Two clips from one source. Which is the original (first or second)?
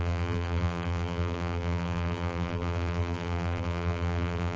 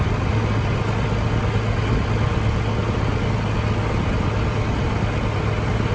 second